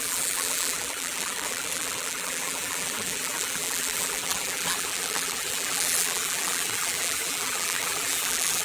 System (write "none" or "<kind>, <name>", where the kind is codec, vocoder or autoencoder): vocoder, BigVGAN v2